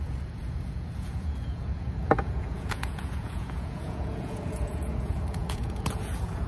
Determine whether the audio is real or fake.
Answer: fake